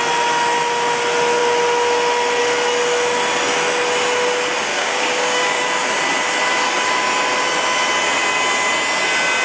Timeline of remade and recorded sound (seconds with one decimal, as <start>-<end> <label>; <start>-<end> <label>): 0.0-4.7 recorded; 4.7-5.6 remade; 5.6-9.4 recorded